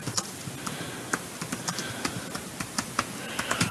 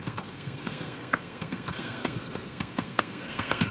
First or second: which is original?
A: first